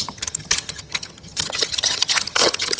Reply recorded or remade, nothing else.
remade